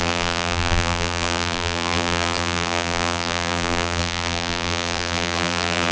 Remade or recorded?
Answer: remade